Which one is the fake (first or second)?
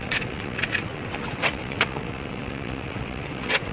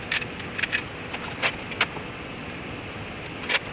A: first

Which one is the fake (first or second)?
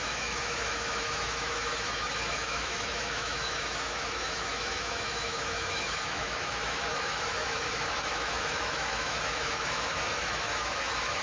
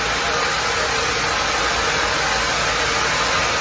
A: first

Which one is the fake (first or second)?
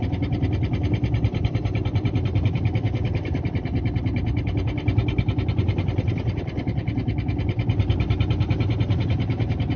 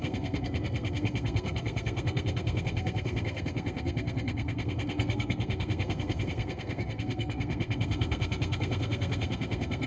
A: second